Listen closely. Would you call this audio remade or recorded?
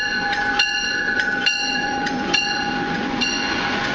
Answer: remade